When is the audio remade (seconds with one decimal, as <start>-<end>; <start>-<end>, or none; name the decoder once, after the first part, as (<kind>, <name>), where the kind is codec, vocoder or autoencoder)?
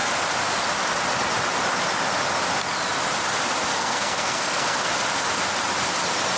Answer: 3.7-4.9 (codec, SNAC)